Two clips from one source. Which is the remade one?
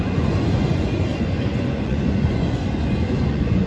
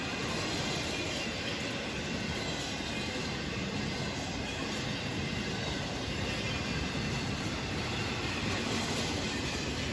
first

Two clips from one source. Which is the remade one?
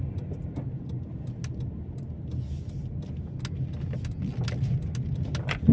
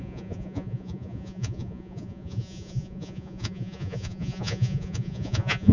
second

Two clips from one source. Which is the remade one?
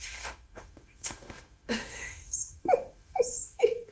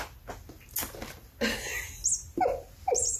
first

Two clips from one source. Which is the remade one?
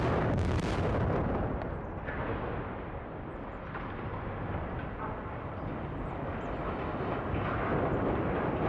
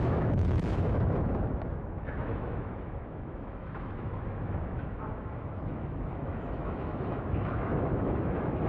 second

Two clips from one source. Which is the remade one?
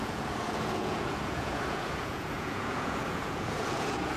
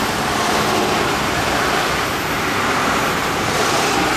first